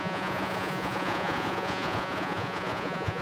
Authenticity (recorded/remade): remade